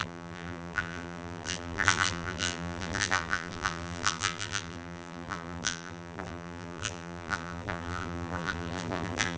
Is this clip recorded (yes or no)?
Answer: no